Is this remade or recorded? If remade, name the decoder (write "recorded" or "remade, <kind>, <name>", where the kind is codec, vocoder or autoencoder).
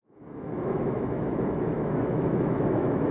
remade, autoencoder, DAC-VAE